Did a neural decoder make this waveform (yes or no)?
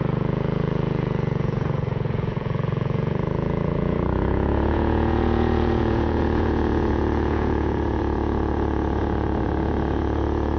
yes